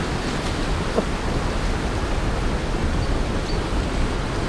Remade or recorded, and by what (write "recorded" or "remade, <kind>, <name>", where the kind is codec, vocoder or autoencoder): recorded